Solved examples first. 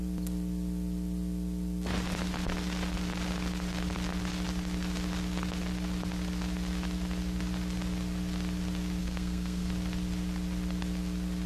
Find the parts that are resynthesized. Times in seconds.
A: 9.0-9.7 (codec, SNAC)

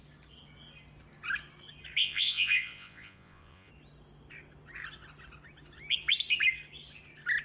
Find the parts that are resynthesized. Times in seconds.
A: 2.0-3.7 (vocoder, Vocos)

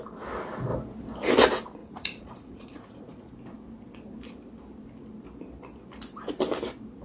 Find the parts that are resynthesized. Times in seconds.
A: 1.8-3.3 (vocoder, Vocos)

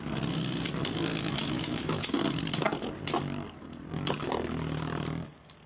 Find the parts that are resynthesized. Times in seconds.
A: 1.1-2.0 (autoencoder, DAC-VAE)

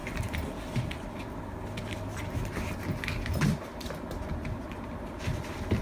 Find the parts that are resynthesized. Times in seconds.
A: 0.0-5.8 (vocoder, BigVGAN v2)

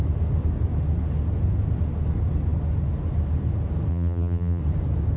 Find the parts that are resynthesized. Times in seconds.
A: 3.9-4.6 (vocoder, BigVGAN v2)

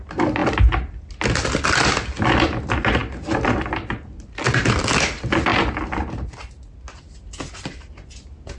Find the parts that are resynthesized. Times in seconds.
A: none